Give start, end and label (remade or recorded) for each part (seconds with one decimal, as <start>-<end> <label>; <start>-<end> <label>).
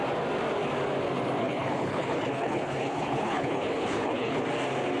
0.0-1.4 recorded; 1.4-4.4 remade; 4.4-5.0 recorded